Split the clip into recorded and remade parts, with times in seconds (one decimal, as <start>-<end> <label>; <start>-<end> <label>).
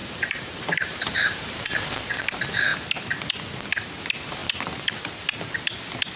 0.0-2.0 remade; 2.0-6.2 recorded